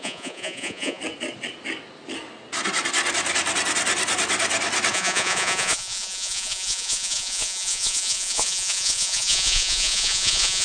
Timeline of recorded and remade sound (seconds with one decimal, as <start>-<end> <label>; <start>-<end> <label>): 0.0-1.0 remade; 1.0-4.9 recorded; 4.9-10.6 remade